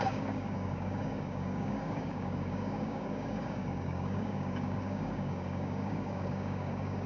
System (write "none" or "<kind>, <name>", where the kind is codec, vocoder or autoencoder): codec, DAC